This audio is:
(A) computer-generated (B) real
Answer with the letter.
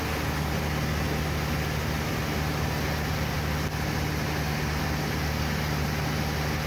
B